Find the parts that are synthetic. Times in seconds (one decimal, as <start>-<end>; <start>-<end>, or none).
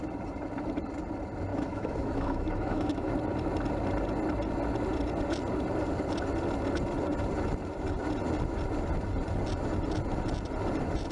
1.5-3.1